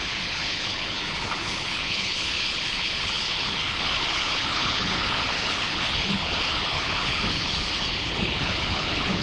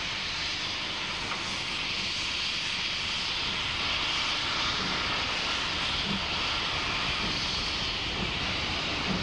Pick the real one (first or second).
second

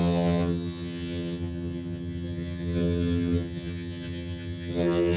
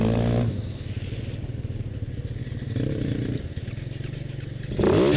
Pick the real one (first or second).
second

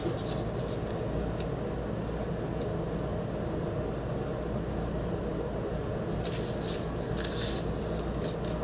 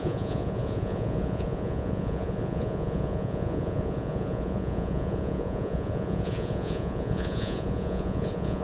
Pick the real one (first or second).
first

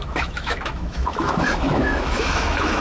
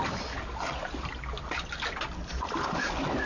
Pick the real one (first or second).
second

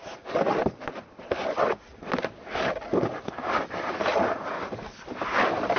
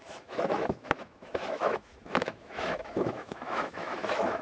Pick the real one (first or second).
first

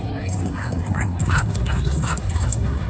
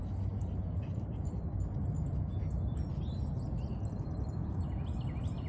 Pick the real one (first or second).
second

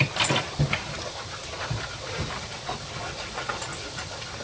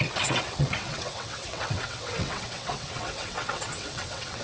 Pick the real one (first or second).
first